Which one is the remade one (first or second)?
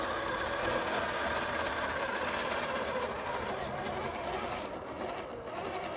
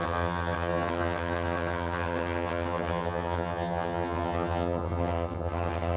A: second